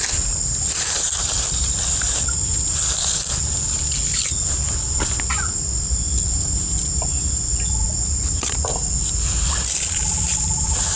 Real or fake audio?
real